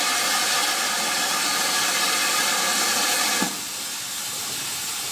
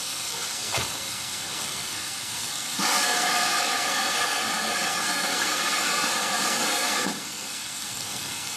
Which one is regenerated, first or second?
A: second